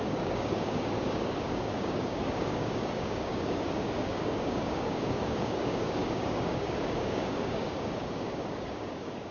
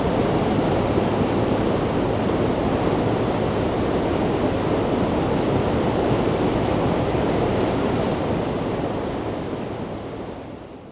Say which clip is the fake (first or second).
first